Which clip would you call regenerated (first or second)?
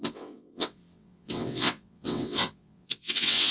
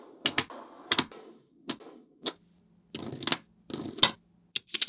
first